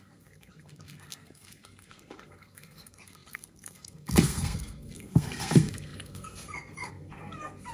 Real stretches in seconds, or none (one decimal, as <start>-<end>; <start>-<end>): none